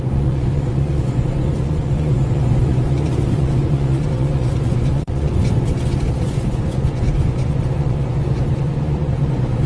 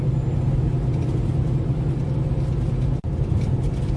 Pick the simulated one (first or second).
first